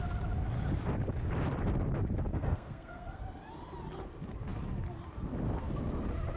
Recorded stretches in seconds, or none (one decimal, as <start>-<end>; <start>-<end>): 0.0-2.3; 3.2-6.4